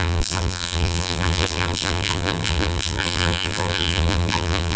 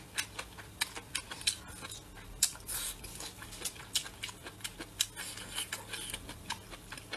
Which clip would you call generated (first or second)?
first